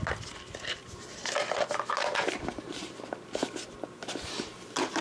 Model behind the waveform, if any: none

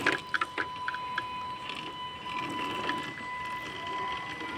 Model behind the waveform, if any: none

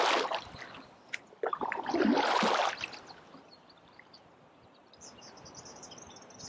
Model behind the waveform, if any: none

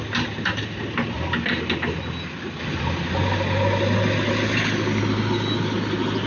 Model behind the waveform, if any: none